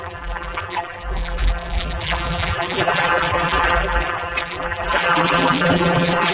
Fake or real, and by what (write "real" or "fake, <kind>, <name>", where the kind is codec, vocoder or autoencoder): fake, vocoder, BigVGAN v2